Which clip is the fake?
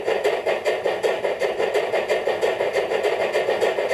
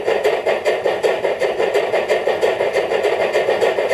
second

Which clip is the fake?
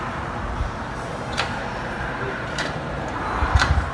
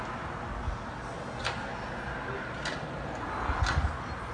first